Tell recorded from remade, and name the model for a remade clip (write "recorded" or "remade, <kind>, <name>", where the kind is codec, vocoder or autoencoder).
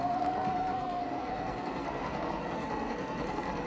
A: remade, codec, SNAC